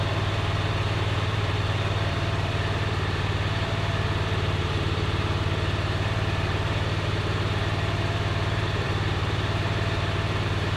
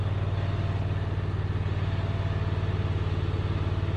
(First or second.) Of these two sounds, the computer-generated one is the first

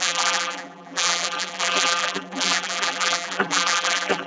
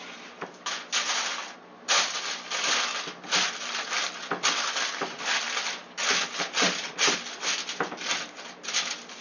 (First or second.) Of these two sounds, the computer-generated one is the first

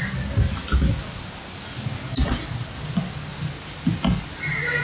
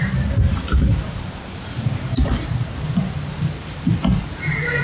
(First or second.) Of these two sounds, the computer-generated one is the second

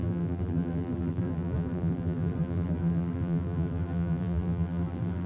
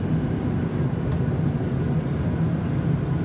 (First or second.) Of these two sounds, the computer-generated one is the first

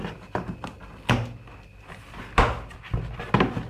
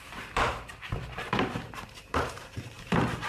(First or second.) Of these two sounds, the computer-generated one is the second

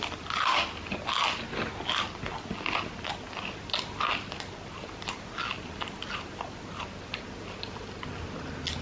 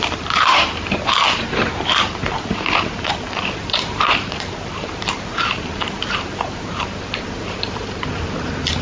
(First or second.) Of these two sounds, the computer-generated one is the second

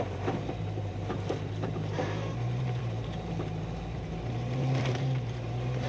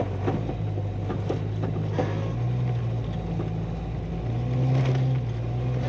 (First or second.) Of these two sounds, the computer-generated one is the first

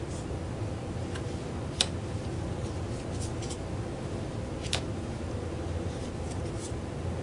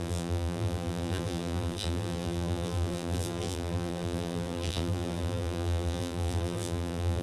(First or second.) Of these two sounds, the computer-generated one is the second